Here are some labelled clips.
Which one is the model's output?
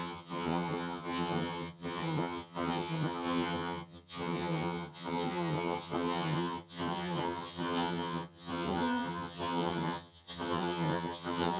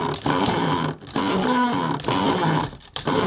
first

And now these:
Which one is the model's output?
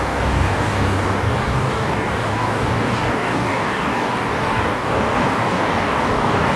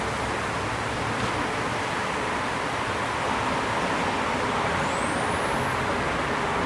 first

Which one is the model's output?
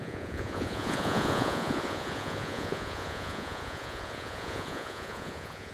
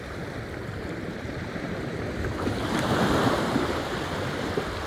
first